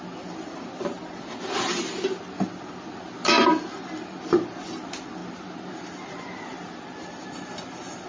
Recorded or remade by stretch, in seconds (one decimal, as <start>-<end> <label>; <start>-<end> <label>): 0.0-8.1 recorded